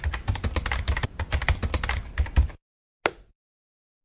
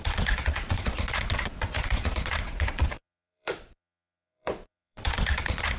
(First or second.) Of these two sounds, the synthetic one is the second